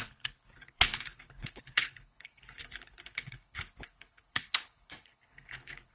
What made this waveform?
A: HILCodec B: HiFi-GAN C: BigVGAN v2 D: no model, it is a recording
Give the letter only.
A